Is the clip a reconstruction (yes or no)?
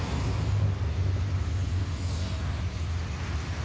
no